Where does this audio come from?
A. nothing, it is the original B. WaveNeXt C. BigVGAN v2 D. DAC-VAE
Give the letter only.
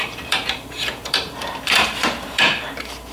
C